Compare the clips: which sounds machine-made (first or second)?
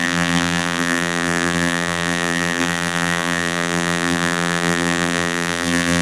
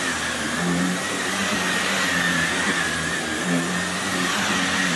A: first